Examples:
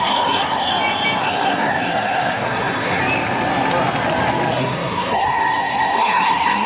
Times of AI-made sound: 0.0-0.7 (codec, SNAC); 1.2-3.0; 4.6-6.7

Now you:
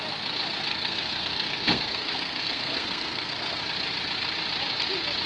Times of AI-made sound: 0.7-3.6 (codec, SNAC)

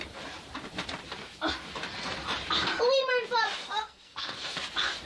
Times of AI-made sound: 3.6-4.6 (codec, SNAC)

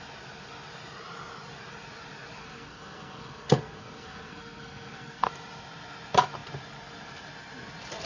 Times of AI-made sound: 2.4-5.3 (codec, SNAC)